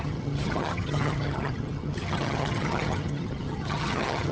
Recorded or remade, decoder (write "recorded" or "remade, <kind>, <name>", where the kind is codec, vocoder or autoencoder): remade, vocoder, HiFi-GAN